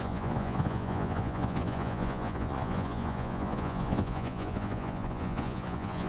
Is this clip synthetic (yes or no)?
yes